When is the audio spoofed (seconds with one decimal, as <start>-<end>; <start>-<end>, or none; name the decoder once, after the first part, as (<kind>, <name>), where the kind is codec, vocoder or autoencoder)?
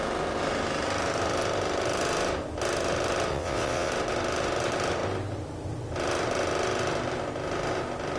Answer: 3.3-3.9 (vocoder, WaveNeXt)